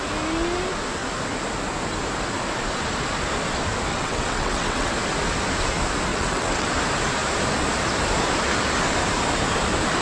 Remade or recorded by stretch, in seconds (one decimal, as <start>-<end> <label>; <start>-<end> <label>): 0.0-3.9 recorded; 3.9-4.9 remade; 4.9-6.1 recorded; 6.1-6.7 remade; 6.7-10.0 recorded